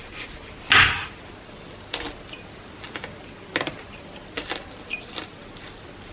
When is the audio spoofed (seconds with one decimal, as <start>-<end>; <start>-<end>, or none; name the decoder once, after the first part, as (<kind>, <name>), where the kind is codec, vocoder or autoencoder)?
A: none